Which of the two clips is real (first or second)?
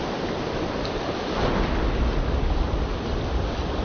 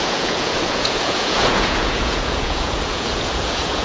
first